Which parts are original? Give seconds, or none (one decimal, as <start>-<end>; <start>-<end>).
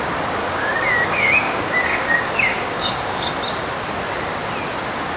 0.0-0.4; 3.3-5.2